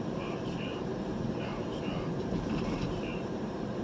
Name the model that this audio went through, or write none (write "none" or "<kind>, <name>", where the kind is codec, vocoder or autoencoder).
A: vocoder, BigVGAN v2